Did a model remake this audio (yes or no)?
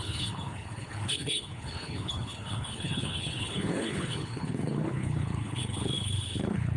yes